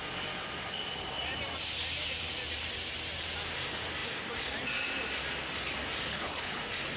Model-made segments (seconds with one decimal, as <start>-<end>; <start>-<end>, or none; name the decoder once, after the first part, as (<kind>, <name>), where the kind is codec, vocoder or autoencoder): 6.1-6.6 (codec, HILCodec)